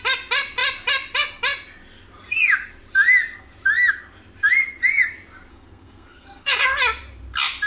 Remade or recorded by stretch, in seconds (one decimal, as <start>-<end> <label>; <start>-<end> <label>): 0.0-5.5 recorded; 5.5-6.5 remade; 6.5-7.7 recorded